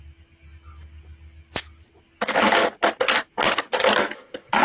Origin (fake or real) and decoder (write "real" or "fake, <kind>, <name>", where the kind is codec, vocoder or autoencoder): real